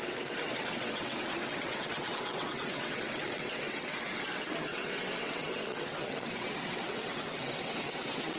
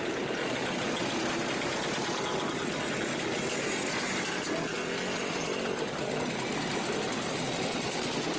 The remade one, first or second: first